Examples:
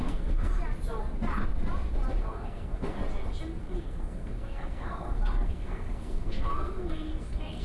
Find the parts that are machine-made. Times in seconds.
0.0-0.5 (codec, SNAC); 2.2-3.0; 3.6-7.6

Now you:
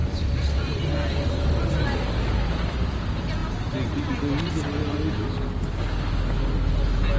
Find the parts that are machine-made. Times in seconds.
none